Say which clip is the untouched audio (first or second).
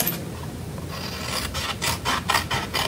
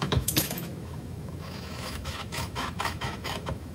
first